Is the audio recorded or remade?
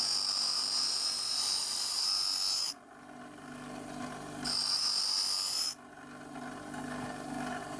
recorded